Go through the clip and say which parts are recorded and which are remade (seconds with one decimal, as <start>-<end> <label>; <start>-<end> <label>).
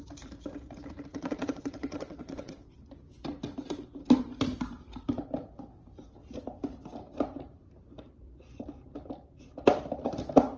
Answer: 0.0-1.1 recorded; 1.1-2.8 remade; 2.8-10.6 recorded